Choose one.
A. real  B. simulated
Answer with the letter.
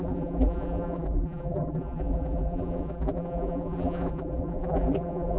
B